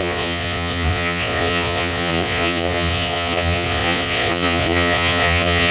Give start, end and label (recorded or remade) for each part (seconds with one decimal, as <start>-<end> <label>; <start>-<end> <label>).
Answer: 0.0-5.7 remade

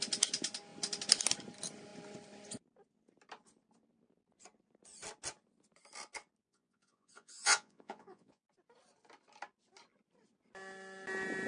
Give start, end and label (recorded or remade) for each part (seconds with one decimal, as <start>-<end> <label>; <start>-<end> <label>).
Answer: 0.0-6.4 recorded; 6.4-8.5 remade; 8.5-11.5 recorded

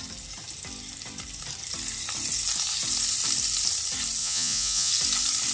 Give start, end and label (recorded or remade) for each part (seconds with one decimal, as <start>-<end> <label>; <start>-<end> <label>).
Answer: 0.0-4.2 recorded; 4.2-4.9 remade; 4.9-5.5 recorded

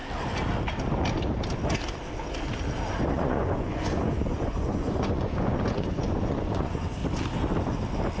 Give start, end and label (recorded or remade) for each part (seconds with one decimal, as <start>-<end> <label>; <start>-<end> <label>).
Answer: 0.0-3.1 recorded; 3.1-7.0 remade; 7.0-8.2 recorded

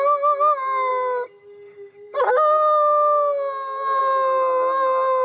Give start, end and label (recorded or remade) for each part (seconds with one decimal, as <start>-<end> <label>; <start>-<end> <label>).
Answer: 0.0-5.2 recorded